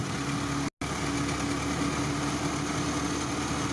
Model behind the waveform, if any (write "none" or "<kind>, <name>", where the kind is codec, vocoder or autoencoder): none